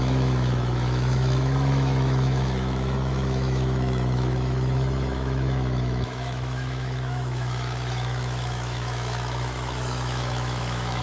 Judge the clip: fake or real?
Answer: fake